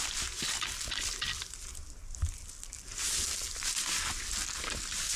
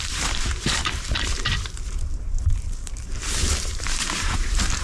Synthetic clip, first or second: second